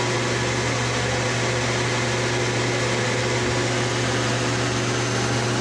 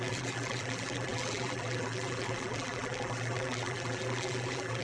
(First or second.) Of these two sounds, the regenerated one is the second